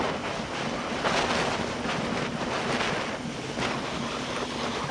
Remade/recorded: recorded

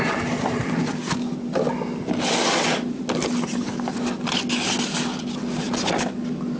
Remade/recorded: recorded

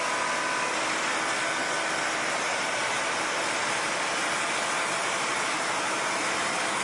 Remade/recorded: recorded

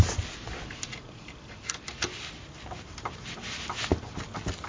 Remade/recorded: recorded